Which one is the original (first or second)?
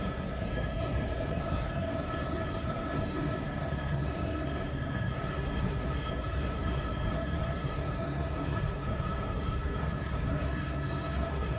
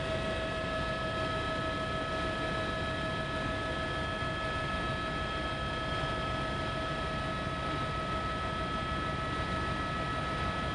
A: second